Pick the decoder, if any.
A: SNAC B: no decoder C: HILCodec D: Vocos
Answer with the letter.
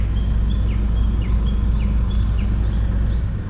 B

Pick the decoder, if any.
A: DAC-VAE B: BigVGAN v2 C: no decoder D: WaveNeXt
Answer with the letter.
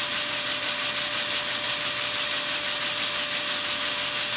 C